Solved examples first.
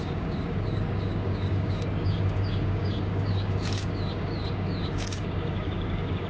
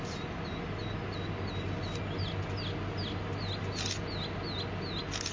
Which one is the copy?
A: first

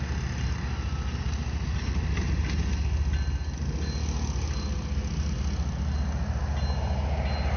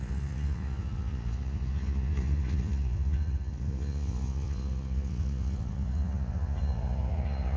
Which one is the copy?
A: second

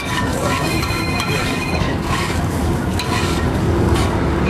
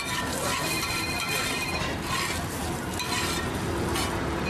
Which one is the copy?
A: first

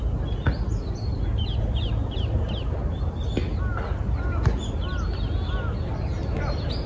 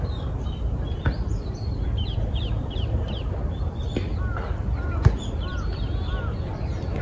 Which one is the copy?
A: second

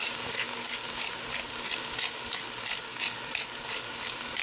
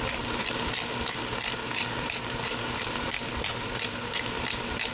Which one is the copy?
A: second